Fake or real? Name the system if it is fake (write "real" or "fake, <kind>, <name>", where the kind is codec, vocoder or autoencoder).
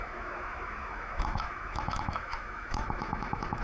fake, autoencoder, DAC-VAE